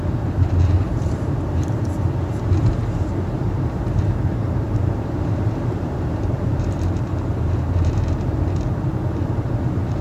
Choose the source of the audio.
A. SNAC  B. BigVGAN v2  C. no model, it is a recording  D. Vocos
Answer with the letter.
B